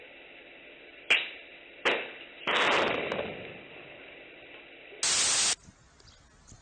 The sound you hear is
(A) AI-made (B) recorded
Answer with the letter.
B